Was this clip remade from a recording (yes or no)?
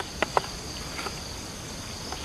no